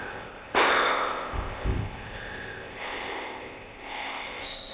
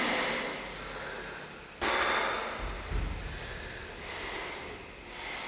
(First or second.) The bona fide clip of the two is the second